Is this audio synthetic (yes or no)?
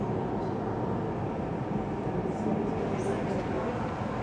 no